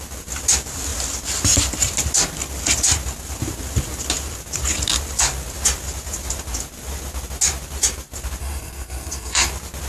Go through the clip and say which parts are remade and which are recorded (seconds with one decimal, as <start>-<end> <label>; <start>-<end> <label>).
0.0-8.4 recorded; 8.4-9.5 remade; 9.5-9.9 recorded